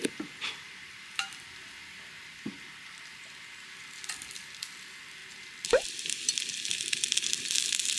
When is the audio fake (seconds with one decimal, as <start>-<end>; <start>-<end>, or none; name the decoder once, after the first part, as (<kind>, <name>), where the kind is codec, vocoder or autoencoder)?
0.4-4.4 (vocoder, BigVGAN v2); 5.2-8.0